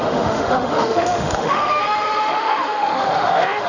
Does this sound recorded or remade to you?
remade